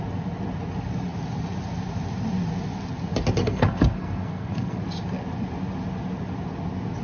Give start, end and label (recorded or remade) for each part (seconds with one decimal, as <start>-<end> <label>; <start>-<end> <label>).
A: 0.0-3.4 recorded; 3.4-4.8 remade; 4.8-7.0 recorded